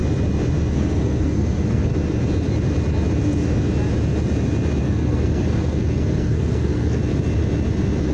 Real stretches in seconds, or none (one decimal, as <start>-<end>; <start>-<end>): 0.0-0.7; 1.9-4.8; 7.0-8.1